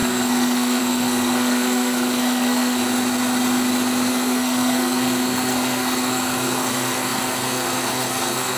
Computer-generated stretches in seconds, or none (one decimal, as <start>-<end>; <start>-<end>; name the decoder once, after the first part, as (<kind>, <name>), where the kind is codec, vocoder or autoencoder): 0.0-2.8 (codec, SNAC); 4.1-8.6